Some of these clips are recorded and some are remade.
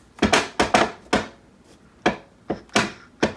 recorded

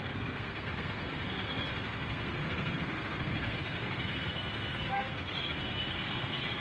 remade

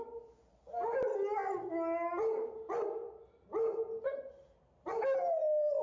recorded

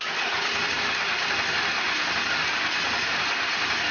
recorded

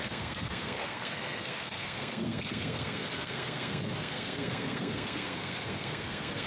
remade